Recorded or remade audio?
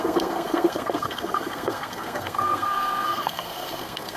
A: remade